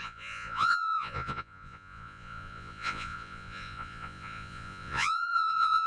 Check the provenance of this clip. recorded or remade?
remade